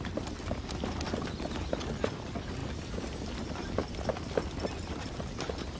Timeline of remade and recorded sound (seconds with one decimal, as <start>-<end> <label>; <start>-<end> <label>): 0.0-5.8 recorded